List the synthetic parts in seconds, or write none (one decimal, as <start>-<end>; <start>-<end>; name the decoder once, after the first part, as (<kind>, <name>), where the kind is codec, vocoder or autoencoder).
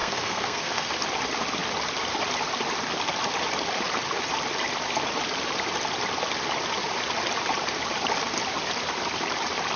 0.0-0.9 (codec, SNAC)